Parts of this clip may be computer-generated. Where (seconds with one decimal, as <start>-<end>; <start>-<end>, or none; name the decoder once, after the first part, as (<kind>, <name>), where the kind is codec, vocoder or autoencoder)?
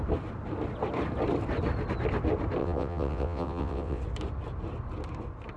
2.6-4.0 (vocoder, WaveNeXt)